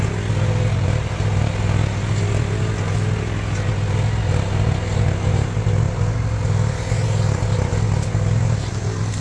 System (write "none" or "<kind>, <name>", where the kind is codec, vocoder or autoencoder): none